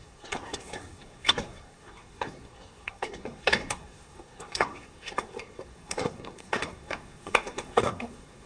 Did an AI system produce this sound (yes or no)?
yes